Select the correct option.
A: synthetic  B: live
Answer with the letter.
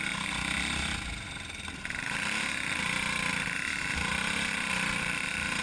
B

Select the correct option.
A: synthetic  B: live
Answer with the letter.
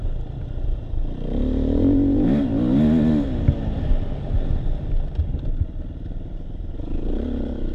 B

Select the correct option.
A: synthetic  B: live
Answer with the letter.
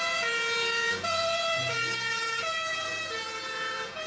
A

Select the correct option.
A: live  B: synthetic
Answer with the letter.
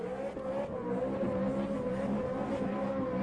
A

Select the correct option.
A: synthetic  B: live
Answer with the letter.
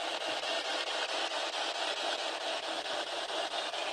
B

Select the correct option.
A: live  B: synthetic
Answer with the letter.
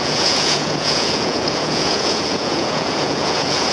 B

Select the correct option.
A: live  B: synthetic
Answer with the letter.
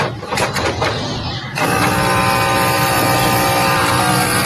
A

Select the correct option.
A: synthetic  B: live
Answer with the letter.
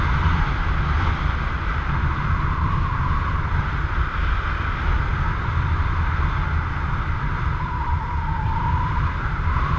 B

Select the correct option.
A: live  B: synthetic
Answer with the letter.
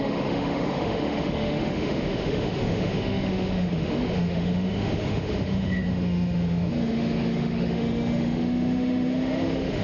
B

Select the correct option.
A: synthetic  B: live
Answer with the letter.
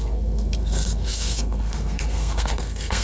A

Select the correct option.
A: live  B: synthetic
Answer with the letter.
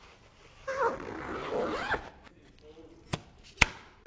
A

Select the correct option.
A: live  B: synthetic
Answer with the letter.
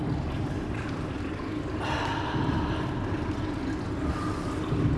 A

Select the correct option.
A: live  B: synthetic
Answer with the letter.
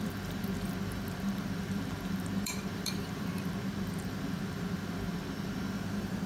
B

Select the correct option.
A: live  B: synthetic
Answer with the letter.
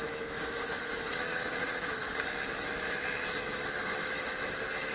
B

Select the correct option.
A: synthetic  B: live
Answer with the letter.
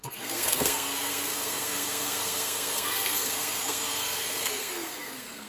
A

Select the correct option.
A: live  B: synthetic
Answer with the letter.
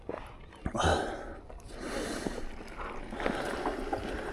A